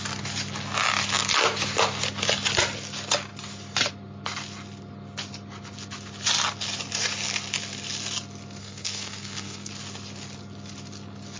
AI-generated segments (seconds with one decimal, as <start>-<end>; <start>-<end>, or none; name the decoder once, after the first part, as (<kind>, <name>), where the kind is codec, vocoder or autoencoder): 8.6-9.7 (codec, SNAC)